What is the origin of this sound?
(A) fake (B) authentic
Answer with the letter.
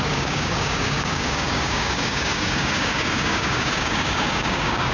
A